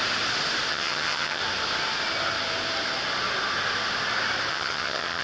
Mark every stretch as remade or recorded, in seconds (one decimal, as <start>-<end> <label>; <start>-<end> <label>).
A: 0.0-0.7 recorded; 0.7-1.4 remade; 1.4-4.5 recorded; 4.5-5.2 remade